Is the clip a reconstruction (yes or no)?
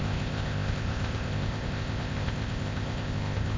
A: yes